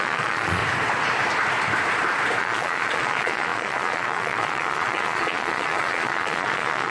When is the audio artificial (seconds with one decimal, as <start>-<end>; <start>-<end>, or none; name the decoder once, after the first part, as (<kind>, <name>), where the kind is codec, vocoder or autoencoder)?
0.0-0.6 (vocoder, Vocos); 2.4-6.9